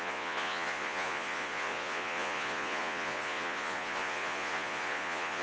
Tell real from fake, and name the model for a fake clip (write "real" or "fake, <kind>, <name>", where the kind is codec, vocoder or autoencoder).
fake, vocoder, Vocos